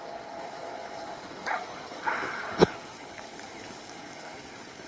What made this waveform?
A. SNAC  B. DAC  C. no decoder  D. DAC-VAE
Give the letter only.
B